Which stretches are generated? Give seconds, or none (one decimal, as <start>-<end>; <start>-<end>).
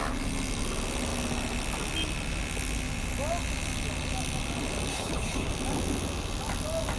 4.9-5.5